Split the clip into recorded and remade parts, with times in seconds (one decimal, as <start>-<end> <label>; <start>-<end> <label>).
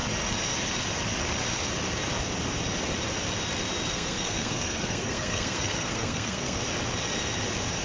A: 0.0-3.9 recorded; 3.9-6.6 remade; 6.6-7.8 recorded